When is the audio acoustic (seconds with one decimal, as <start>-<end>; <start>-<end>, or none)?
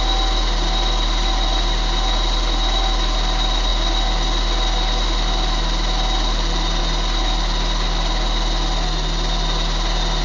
0.0-10.2